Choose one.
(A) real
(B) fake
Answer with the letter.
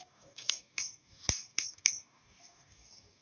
B